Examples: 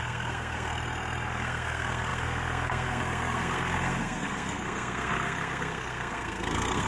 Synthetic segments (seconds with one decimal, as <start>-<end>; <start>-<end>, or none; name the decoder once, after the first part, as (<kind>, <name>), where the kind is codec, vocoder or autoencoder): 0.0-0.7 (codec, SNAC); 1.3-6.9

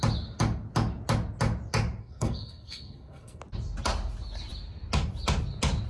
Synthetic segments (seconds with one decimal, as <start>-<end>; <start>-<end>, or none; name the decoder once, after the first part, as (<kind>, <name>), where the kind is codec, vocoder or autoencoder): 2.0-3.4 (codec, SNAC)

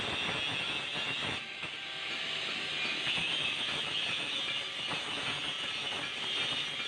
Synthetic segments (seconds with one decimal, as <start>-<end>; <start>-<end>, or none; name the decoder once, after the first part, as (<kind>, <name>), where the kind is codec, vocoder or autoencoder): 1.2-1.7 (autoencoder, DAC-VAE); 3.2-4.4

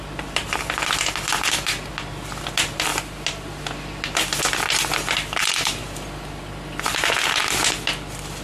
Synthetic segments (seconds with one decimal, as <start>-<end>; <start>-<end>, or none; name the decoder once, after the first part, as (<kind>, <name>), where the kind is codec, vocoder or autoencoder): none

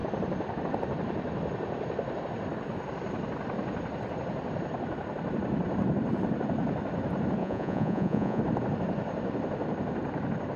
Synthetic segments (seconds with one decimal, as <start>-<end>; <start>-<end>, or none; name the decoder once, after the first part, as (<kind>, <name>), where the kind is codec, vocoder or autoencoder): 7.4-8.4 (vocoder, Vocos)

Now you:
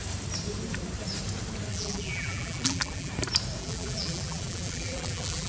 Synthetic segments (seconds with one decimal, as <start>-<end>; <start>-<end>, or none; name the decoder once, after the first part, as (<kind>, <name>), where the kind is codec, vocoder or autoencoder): 1.7-3.1 (vocoder, BigVGAN v2); 3.6-5.5